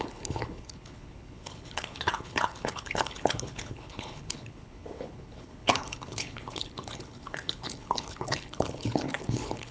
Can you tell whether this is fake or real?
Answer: fake